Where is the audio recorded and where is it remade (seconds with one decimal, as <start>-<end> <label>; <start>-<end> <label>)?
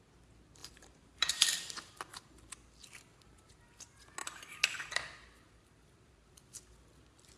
0.0-0.6 recorded; 0.6-1.3 remade; 1.3-7.4 recorded